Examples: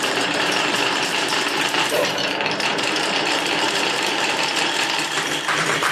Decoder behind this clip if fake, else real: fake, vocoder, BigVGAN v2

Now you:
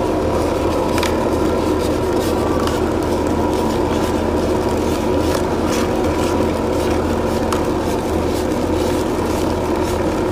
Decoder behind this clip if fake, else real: real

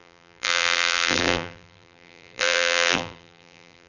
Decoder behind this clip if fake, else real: fake, vocoder, BigVGAN v2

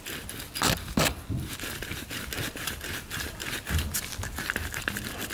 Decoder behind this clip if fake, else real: real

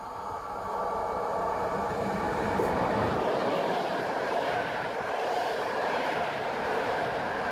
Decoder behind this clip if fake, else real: fake, vocoder, BigVGAN v2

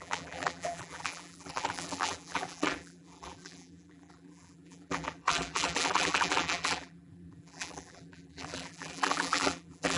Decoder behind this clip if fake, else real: fake, vocoder, BigVGAN v2